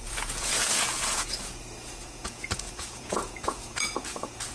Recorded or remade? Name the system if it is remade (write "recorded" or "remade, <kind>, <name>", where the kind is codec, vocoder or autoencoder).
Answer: remade, vocoder, Vocos